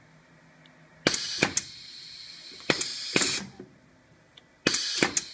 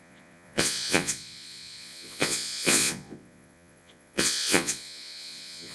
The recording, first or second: first